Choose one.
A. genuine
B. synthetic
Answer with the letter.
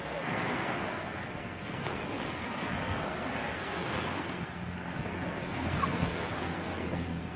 B